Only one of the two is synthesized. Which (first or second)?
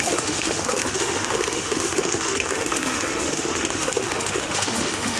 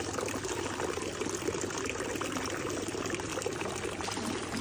first